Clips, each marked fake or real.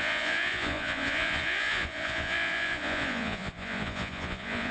fake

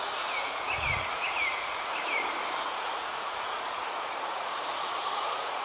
fake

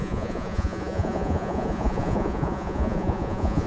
fake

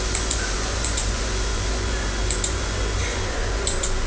fake